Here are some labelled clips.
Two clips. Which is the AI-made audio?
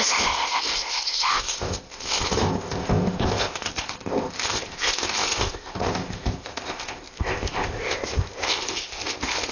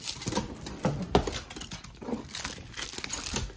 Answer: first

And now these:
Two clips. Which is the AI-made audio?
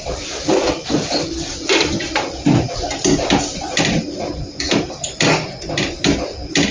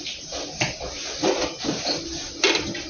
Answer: first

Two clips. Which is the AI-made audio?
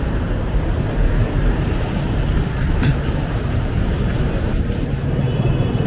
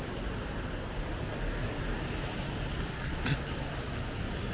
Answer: first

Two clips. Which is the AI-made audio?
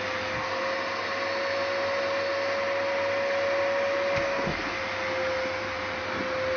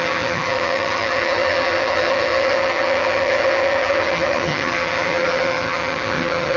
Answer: second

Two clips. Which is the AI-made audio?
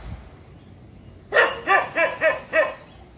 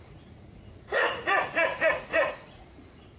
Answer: second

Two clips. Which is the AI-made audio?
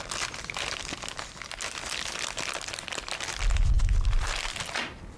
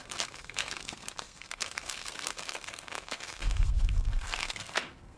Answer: second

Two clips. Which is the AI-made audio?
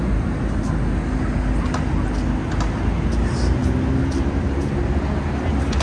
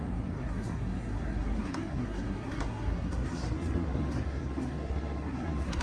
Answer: second